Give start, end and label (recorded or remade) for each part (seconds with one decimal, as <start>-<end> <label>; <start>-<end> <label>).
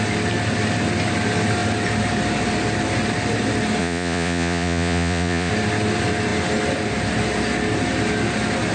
0.0-3.8 recorded; 3.8-5.5 remade; 5.5-8.7 recorded